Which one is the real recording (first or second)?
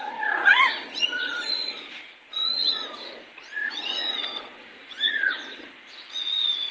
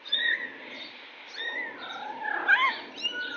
second